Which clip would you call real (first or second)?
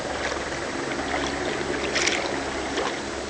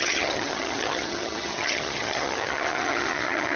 first